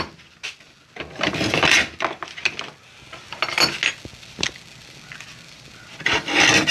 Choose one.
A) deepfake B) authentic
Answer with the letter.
B